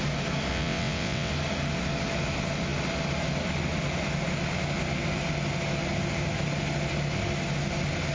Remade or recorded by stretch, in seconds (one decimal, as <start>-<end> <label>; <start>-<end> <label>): 0.0-0.5 recorded; 0.5-1.3 remade; 1.3-8.1 recorded